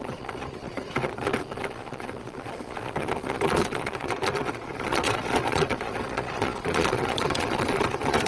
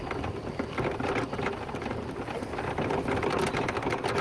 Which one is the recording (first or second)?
second